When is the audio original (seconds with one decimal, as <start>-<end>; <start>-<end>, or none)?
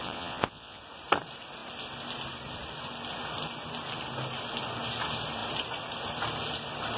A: 0.8-7.0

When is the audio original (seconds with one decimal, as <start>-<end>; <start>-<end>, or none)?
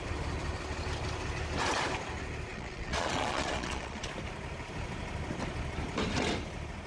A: 0.0-2.5; 4.1-6.9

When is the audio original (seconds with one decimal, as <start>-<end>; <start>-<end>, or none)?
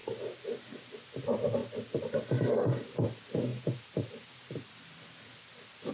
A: 0.0-5.9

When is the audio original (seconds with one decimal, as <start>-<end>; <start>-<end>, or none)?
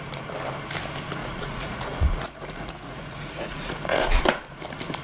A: 0.0-1.2; 4.2-5.0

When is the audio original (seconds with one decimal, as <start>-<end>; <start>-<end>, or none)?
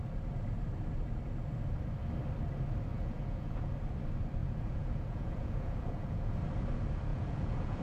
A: 0.0-2.9; 3.7-4.4; 6.3-7.1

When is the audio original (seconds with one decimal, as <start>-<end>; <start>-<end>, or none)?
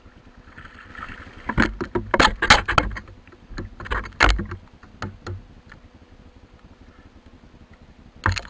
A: 0.0-8.5